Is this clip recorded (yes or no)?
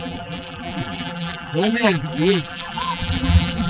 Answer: no